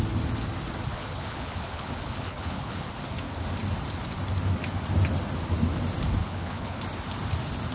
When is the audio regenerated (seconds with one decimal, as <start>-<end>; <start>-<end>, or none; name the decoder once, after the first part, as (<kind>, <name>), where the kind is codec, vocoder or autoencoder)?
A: 0.9-2.9 (codec, HILCodec); 6.2-6.8